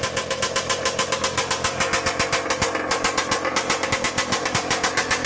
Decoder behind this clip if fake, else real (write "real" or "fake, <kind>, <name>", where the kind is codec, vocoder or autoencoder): real